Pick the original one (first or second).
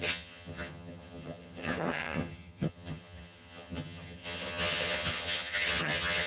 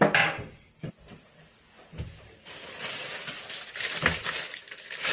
second